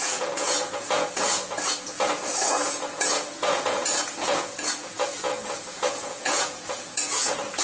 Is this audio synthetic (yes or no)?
yes